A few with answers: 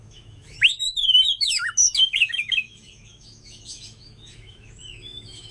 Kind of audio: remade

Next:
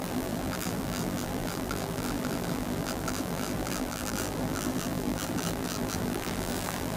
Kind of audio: remade